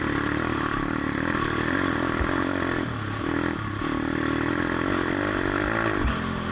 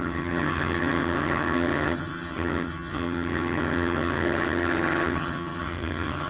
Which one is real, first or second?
first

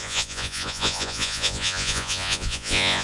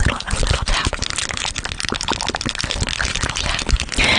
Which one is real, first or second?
second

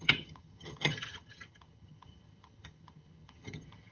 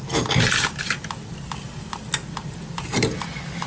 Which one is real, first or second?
second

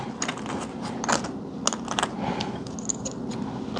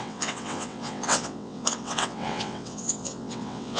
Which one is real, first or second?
first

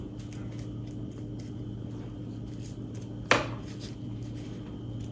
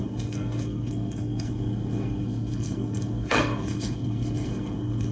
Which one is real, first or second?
first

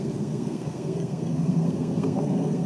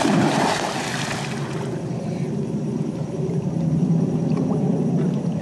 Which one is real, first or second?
second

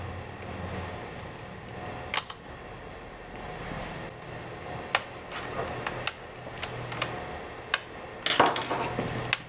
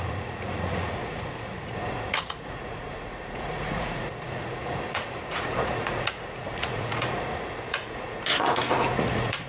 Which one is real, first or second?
first